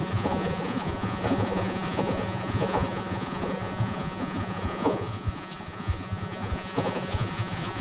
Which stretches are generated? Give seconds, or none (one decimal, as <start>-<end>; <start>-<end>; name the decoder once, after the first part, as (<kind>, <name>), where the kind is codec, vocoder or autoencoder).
0.0-7.8 (vocoder, Vocos)